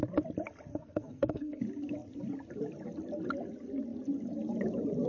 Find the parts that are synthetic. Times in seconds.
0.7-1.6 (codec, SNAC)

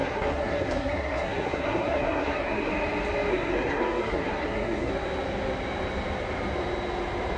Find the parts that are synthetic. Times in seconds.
0.0-2.7 (codec, SNAC); 3.3-4.9